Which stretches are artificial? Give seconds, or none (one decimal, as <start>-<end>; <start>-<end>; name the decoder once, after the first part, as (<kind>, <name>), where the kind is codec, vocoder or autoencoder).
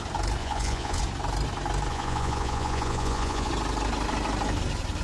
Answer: 0.4-1.0 (vocoder, Vocos); 1.9-3.5